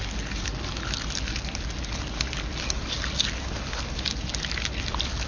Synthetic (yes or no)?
no